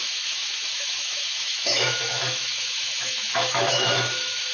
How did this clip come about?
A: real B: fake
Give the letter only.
B